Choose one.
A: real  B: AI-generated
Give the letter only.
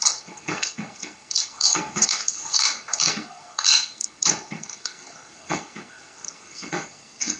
B